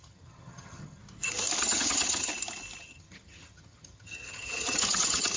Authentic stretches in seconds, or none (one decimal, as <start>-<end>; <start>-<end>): 1.0-1.6; 2.3-2.8